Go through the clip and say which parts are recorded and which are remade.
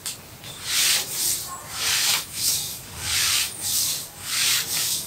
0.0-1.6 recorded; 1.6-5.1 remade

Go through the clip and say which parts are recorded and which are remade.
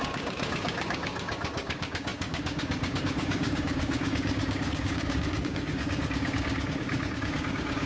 0.0-7.9 remade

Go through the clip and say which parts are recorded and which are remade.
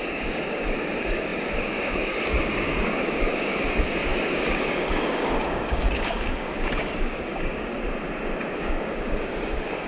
0.0-7.7 remade; 7.7-8.5 recorded; 8.5-9.9 remade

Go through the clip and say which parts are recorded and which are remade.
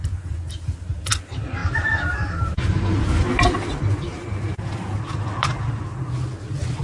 0.0-6.8 recorded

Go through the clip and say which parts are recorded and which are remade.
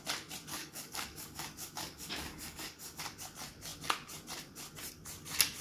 0.0-0.5 recorded; 0.5-3.0 remade; 3.0-5.6 recorded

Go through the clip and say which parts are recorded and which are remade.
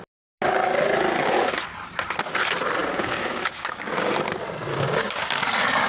0.0-2.8 recorded; 2.8-4.1 remade; 4.1-4.7 recorded; 4.7-5.3 remade; 5.3-5.9 recorded